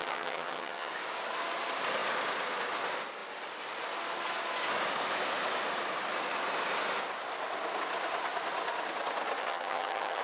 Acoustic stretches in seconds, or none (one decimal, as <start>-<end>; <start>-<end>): 0.9-9.4